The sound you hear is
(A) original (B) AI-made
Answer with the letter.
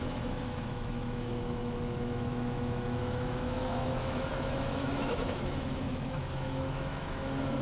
B